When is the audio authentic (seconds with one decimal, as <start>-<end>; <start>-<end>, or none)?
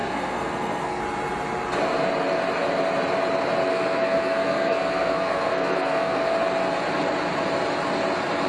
1.0-3.7; 6.3-8.5